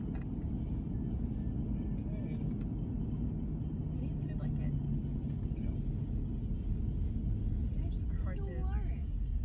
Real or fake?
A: real